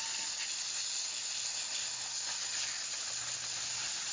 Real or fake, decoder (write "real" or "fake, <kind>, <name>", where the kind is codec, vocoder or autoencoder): real